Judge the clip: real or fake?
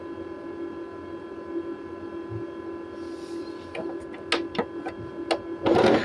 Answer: real